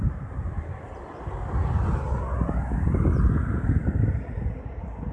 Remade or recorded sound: recorded